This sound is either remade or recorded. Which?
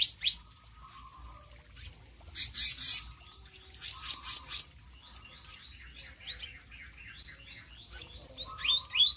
recorded